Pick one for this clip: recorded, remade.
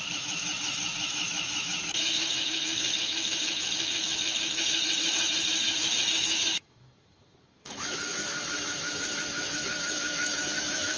remade